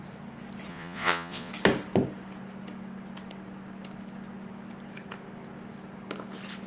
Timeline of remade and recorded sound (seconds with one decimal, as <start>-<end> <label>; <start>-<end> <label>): 0.0-0.7 recorded; 0.7-1.5 remade; 1.5-6.7 recorded